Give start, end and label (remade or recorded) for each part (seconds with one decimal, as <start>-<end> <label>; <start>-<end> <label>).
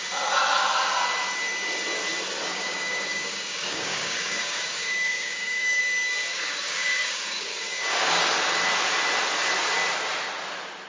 0.0-2.5 recorded; 2.5-5.8 remade; 5.8-6.3 recorded; 6.3-8.2 remade; 8.2-10.9 recorded